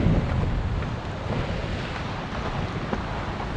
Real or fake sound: real